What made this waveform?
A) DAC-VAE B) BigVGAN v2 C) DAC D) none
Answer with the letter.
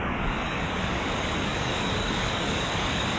C